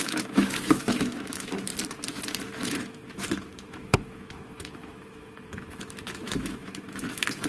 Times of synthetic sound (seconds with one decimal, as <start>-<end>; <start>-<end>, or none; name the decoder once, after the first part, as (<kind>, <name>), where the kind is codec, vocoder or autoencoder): 0.0-1.7 (autoencoder, DAC-VAE); 2.4-7.5